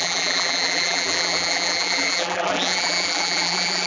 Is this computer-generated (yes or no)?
yes